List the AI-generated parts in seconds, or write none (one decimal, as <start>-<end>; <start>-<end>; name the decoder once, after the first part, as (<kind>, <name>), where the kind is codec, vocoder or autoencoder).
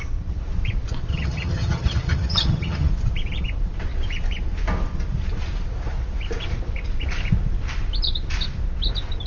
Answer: 1.1-2.9 (vocoder, HiFi-GAN)